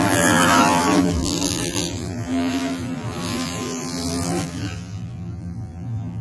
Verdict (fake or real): fake